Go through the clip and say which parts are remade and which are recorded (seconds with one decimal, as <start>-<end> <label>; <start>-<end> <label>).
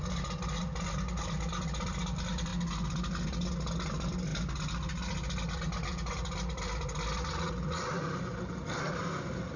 0.0-9.6 recorded